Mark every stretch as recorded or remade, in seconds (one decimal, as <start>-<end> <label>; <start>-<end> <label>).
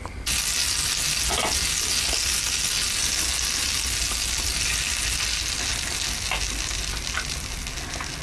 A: 0.0-8.2 recorded